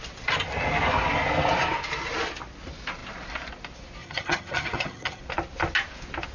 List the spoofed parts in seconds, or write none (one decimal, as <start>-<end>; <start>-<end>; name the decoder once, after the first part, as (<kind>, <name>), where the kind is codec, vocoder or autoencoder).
4.0-5.2 (vocoder, HiFi-GAN)